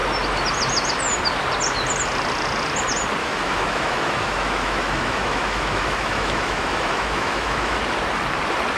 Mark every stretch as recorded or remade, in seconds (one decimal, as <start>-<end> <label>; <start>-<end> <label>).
0.0-3.2 recorded; 3.2-7.8 remade; 7.8-8.8 recorded